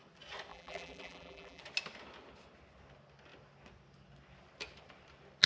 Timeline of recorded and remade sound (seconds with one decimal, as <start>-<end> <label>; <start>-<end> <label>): 0.0-0.5 recorded; 0.5-1.6 remade; 1.6-5.5 recorded